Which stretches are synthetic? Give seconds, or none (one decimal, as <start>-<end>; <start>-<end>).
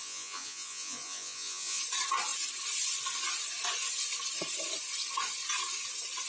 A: 0.0-1.8